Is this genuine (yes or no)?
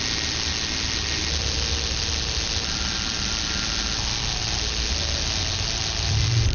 yes